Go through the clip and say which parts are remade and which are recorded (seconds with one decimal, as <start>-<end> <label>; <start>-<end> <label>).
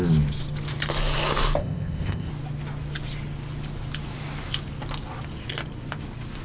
0.0-1.6 recorded; 1.6-2.3 remade; 2.3-6.4 recorded